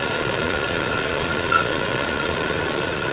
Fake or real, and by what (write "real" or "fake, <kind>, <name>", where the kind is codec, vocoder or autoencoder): fake, vocoder, Vocos